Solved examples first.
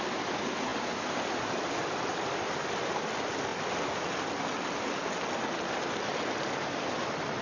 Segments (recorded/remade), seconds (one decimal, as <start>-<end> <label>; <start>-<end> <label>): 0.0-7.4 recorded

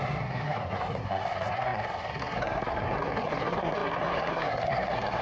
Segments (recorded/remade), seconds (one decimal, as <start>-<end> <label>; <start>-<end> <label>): 0.0-5.2 remade

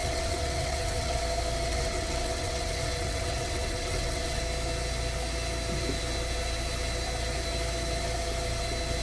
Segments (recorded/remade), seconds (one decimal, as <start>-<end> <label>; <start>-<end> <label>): 0.0-1.2 remade; 1.2-1.7 recorded; 1.7-4.4 remade; 4.4-9.0 recorded

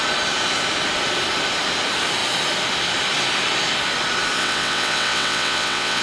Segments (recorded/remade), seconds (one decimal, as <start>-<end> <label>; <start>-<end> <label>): 0.0-4.4 recorded; 4.4-6.0 remade

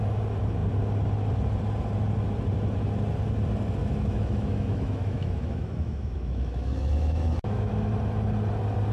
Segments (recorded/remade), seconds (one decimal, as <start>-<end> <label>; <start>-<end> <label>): 0.0-3.8 recorded; 3.8-7.7 remade; 7.7-8.9 recorded